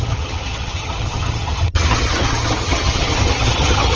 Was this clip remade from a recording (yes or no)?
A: yes